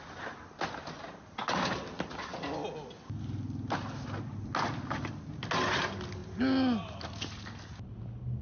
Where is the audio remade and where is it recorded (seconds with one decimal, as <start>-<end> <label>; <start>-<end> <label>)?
0.0-8.4 recorded